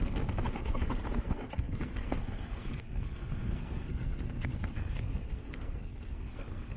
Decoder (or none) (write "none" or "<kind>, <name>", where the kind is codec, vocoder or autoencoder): codec, SNAC